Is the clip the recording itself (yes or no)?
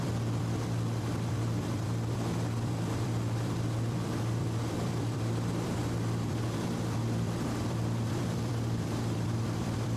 no